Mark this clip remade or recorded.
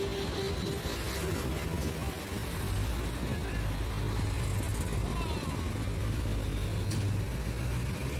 recorded